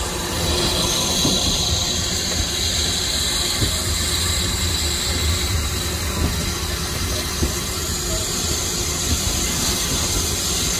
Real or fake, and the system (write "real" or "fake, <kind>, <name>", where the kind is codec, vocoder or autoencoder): real